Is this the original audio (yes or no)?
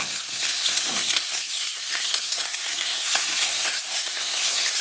no